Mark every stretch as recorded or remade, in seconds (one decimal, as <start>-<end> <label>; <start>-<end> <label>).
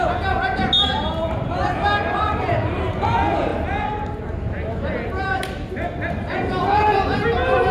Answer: 0.0-7.7 recorded